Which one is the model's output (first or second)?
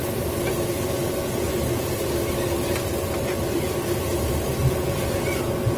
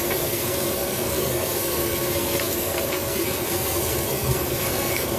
second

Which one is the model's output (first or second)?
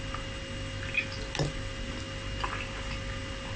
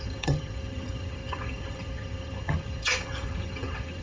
second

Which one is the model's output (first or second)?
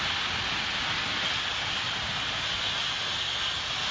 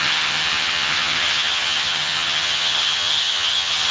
second